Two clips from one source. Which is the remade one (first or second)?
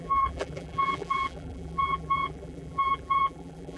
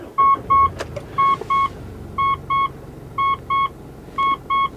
first